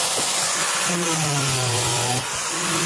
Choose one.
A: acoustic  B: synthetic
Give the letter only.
B